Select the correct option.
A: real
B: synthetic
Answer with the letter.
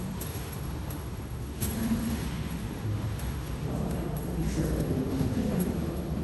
B